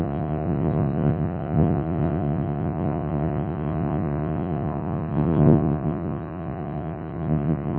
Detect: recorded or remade remade